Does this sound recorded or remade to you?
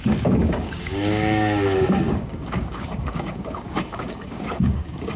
remade